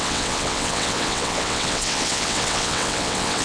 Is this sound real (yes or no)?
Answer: no